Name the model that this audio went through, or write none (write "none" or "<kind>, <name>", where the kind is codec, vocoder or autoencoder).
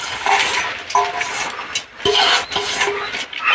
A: none